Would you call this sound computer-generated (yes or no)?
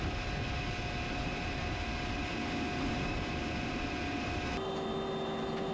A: no